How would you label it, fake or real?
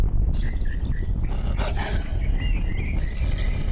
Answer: real